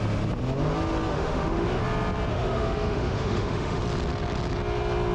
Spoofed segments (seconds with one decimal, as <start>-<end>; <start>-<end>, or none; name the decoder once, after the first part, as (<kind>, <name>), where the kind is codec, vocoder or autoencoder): 1.1-1.8 (autoencoder, DAC-VAE); 2.3-3.8